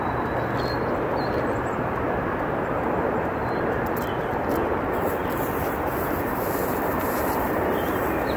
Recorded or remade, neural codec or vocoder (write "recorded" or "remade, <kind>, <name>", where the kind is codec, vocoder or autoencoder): recorded